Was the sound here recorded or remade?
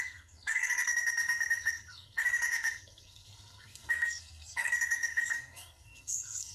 remade